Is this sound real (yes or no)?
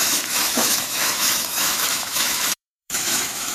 no